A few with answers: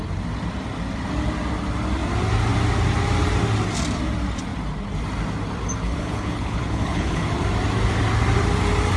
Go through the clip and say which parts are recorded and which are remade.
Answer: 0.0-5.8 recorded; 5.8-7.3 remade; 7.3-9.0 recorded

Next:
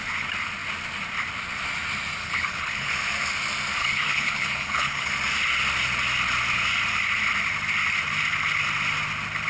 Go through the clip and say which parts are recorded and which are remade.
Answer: 0.0-2.2 recorded; 2.2-2.9 remade; 2.9-3.8 recorded; 3.8-5.1 remade; 5.1-9.5 recorded

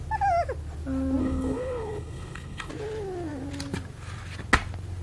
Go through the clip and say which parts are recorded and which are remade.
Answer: 0.0-1.2 recorded; 1.2-2.7 remade; 2.7-5.0 recorded